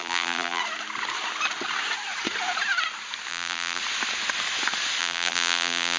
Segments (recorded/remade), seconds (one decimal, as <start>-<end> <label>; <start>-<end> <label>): 0.0-0.6 remade; 0.6-3.3 recorded; 3.3-3.8 remade; 3.8-5.0 recorded; 5.0-6.0 remade